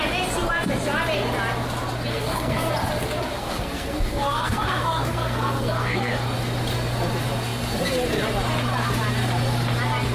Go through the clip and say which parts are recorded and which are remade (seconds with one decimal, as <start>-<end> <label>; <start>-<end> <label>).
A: 0.0-2.1 recorded; 2.1-2.7 remade; 2.7-3.3 recorded; 3.3-6.1 remade; 6.1-10.1 recorded